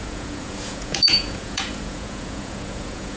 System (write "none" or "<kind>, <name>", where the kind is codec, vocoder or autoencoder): vocoder, Vocos